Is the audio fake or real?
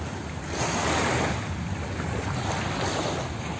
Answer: real